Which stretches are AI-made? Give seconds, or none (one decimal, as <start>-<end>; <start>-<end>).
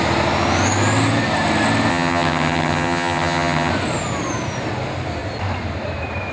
1.9-3.7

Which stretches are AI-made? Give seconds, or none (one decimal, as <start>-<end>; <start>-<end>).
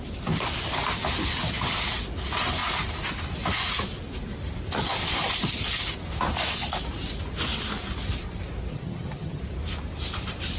8.7-9.4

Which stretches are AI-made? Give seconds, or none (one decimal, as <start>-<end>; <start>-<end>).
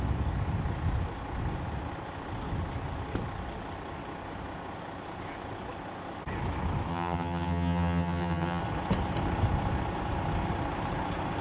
6.9-8.6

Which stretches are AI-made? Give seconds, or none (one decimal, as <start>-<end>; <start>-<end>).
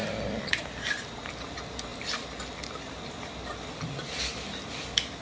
none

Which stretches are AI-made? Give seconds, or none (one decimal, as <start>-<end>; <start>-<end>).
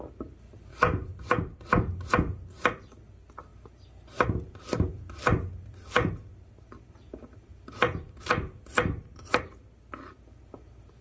none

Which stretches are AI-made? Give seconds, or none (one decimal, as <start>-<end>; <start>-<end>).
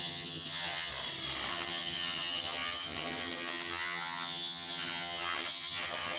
0.0-0.9; 1.5-6.2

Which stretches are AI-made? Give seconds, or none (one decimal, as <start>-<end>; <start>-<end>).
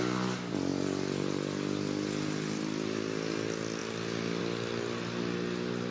none